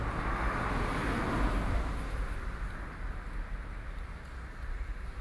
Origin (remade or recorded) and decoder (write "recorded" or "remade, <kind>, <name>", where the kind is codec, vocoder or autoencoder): recorded